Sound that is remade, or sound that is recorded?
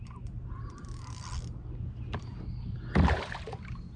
recorded